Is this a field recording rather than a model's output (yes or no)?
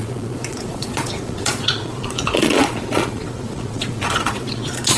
no